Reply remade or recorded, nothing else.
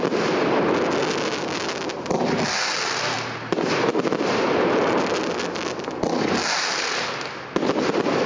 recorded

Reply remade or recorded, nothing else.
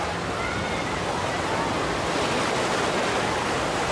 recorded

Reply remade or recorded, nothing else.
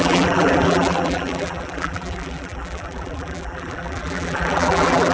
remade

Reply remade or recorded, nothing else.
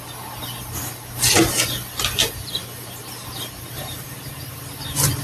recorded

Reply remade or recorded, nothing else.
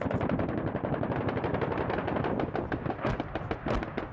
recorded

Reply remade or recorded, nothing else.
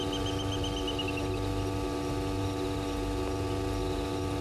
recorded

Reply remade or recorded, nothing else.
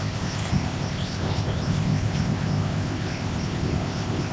remade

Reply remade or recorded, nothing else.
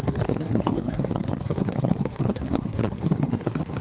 remade